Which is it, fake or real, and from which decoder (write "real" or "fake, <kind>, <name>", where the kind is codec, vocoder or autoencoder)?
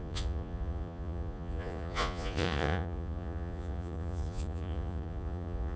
fake, vocoder, Vocos